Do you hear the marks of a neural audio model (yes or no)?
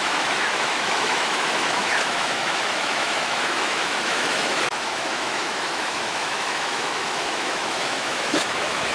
yes